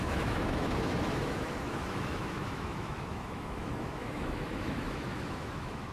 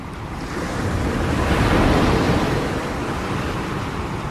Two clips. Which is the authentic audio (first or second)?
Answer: second